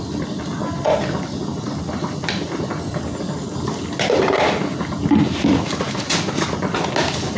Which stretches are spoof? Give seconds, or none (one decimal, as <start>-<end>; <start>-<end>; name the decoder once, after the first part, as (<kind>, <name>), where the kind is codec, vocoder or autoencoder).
none